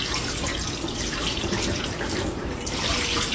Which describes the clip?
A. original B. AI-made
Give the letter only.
B